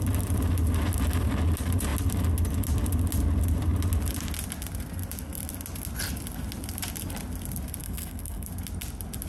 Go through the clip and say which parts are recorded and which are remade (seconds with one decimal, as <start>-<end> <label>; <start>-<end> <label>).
0.0-7.8 recorded; 7.8-8.5 remade; 8.5-9.3 recorded